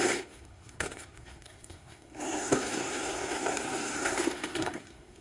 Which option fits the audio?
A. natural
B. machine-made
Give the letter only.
B